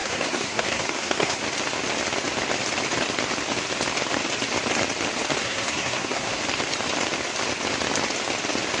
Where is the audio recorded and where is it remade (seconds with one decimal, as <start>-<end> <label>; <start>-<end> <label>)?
0.0-1.4 remade; 1.4-5.4 recorded; 5.4-6.4 remade; 6.4-8.8 recorded